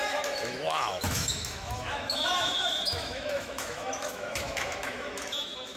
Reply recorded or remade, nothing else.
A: remade